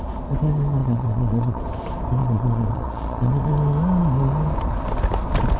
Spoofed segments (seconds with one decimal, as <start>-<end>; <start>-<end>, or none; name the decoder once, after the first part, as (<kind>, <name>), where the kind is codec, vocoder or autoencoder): 0.8-1.6 (vocoder, Vocos); 2.2-3.5